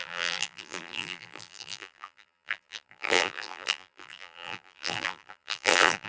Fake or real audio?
fake